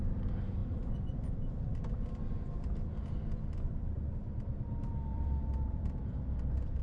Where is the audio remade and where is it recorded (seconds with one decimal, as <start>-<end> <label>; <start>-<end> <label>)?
0.0-5.1 recorded; 5.1-6.0 remade; 6.0-6.8 recorded